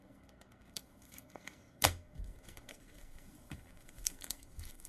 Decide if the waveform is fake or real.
fake